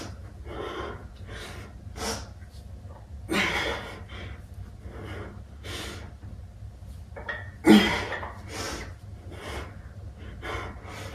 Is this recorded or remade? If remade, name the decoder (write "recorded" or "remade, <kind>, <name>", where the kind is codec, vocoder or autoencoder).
recorded